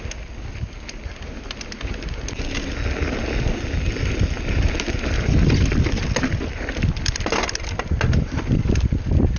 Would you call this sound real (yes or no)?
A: yes